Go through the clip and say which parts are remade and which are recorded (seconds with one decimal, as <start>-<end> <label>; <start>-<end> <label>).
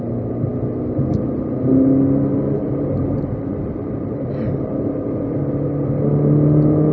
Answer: 0.0-2.3 recorded; 2.3-5.4 remade; 5.4-6.9 recorded